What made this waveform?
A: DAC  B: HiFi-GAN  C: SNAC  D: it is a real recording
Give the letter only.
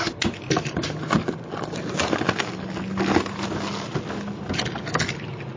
D